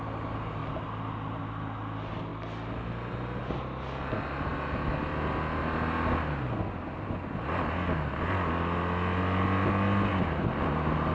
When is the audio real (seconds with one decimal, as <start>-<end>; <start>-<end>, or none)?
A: 0.0-11.1